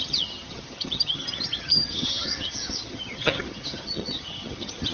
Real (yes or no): no